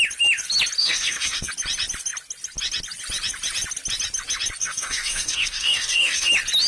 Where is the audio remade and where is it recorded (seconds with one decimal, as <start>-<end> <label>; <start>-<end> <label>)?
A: 0.0-0.8 recorded; 0.8-1.5 remade; 1.5-4.6 recorded; 4.6-6.3 remade; 6.3-6.7 recorded